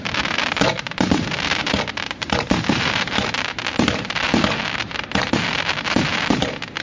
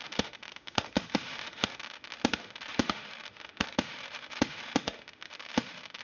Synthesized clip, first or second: second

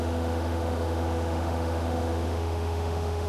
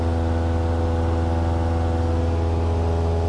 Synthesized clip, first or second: first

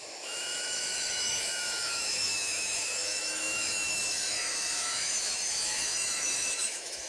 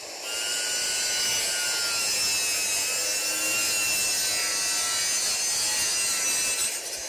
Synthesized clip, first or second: first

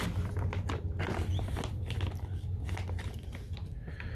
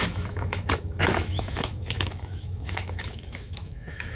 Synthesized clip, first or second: second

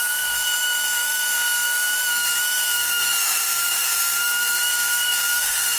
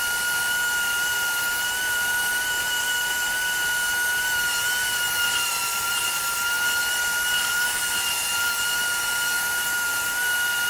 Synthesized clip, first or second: first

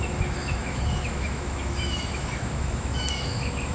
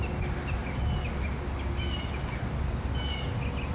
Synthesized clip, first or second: first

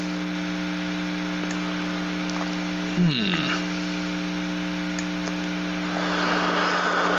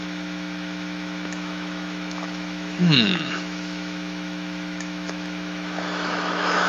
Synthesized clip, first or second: second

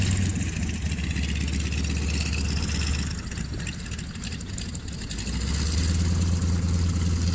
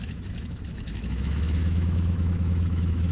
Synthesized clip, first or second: second